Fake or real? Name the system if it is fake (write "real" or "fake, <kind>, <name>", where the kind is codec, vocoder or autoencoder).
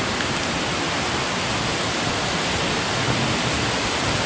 real